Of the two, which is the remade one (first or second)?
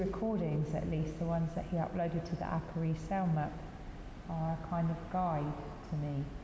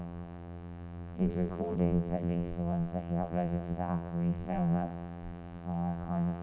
second